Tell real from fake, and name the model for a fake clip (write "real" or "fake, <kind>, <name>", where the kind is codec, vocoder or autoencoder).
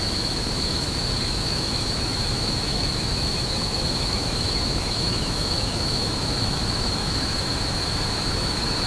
fake, autoencoder, DAC-VAE